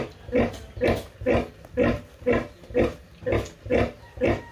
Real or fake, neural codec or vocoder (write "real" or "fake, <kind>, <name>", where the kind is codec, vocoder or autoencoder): real